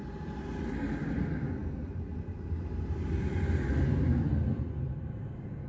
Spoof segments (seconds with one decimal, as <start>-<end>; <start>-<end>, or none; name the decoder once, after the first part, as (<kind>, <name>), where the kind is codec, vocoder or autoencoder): none